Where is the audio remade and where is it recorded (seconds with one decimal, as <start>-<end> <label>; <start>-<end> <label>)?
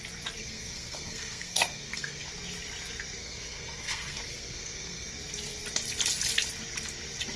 0.0-0.4 recorded; 0.4-2.3 remade; 2.3-3.2 recorded; 3.2-5.1 remade; 5.1-7.4 recorded